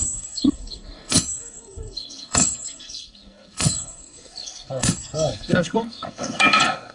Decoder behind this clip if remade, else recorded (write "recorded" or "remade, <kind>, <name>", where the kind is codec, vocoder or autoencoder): remade, codec, SNAC